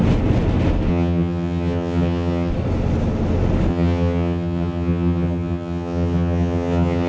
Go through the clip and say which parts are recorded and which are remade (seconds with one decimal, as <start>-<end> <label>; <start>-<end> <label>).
0.0-0.9 recorded; 0.9-2.5 remade; 2.5-3.7 recorded; 3.7-7.1 remade